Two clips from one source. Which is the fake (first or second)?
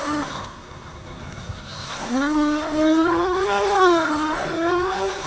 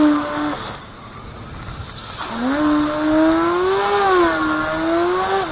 first